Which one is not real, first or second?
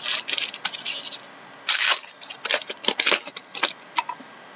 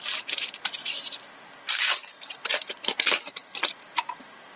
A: second